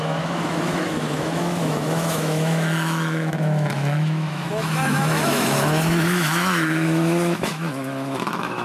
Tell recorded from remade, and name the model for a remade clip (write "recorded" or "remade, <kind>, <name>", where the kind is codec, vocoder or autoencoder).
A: remade, autoencoder, DAC-VAE